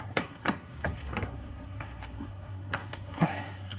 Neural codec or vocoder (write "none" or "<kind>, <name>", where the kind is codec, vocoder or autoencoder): codec, SNAC